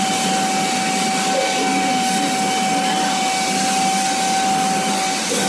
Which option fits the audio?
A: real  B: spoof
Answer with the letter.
A